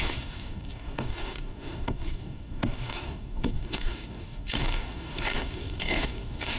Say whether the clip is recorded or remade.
remade